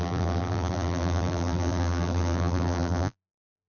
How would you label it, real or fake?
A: fake